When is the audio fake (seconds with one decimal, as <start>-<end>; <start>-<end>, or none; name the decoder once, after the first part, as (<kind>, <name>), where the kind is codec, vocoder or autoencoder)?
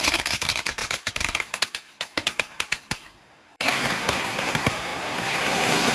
0.0-5.9 (codec, SNAC)